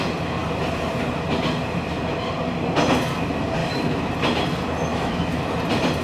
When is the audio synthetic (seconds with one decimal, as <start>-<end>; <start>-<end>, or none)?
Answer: 3.6-4.1; 4.9-5.4